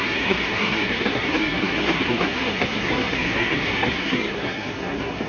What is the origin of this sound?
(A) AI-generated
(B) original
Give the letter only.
A